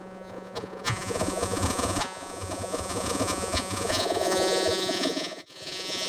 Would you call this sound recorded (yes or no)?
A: no